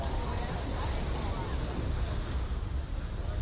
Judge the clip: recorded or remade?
recorded